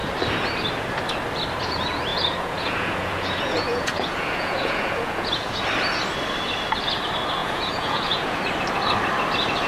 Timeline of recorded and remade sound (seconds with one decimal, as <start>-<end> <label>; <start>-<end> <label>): 0.0-2.1 recorded; 2.1-5.6 remade; 5.6-7.4 recorded; 7.4-8.4 remade; 8.4-9.7 recorded